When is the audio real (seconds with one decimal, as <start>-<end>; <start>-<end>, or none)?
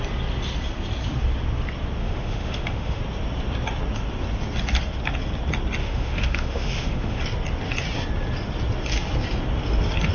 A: 0.0-2.0; 3.0-5.8; 7.2-10.1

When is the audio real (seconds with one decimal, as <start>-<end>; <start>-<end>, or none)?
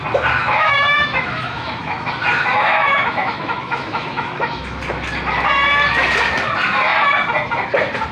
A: 0.0-0.4; 2.1-2.7; 4.8-8.1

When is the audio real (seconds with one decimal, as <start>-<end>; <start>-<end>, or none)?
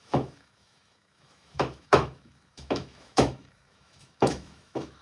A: none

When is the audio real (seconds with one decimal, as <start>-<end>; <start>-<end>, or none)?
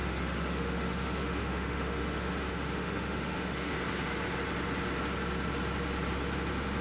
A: 3.7-6.8